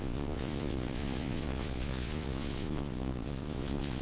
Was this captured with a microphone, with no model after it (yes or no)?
no